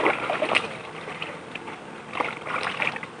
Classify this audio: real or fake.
real